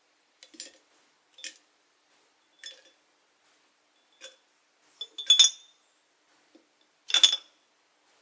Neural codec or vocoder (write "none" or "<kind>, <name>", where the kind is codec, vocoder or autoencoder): none